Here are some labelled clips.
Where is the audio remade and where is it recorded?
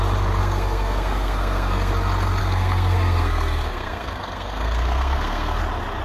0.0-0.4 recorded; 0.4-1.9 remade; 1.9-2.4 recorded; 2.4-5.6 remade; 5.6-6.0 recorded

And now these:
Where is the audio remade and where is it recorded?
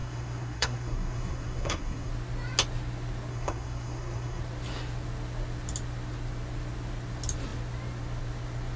0.0-2.1 remade; 2.1-3.3 recorded; 3.3-4.4 remade; 4.4-8.8 recorded